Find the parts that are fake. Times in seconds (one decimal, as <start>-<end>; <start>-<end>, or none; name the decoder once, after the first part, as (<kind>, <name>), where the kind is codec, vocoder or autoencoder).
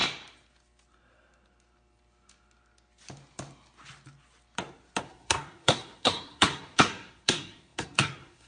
5.0-8.5 (codec, SNAC)